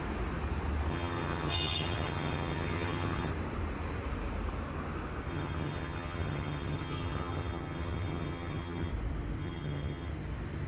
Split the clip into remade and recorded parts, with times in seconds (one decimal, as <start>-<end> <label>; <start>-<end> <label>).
0.0-0.9 recorded; 0.9-3.3 remade; 3.3-5.3 recorded; 5.3-8.9 remade; 8.9-9.4 recorded; 9.4-10.1 remade; 10.1-10.7 recorded